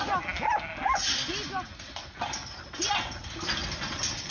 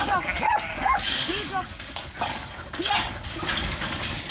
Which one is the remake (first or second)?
second